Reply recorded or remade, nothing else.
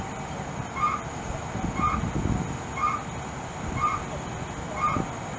recorded